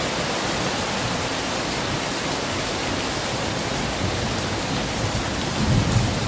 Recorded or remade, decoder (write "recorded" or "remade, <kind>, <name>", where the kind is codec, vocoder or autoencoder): remade, vocoder, BigVGAN v2